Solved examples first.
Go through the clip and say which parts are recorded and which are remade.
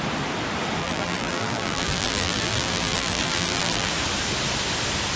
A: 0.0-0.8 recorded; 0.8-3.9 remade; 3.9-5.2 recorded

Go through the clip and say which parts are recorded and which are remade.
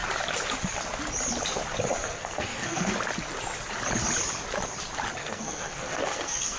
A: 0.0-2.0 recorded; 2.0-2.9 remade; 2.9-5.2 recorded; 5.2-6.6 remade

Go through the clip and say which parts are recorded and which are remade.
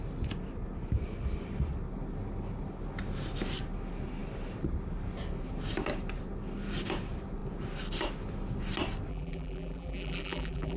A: 0.0-9.1 recorded; 9.1-10.8 remade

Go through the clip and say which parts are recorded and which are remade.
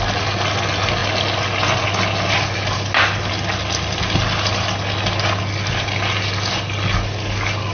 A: 0.0-7.7 recorded